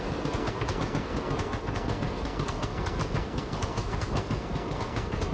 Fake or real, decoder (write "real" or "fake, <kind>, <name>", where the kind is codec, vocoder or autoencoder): fake, codec, SNAC